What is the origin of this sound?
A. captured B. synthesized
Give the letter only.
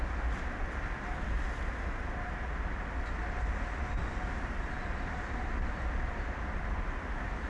A